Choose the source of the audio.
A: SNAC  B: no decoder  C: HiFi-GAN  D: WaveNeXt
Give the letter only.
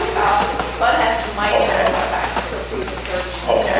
B